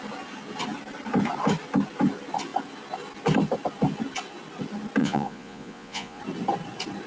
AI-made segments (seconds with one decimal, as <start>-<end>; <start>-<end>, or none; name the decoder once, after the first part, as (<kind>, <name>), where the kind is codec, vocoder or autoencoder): 5.0-6.2 (vocoder, Vocos)